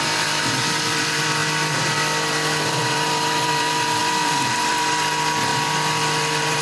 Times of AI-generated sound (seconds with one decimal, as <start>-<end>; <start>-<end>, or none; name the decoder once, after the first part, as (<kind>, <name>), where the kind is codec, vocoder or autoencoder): 0.0-6.6 (vocoder, BigVGAN v2)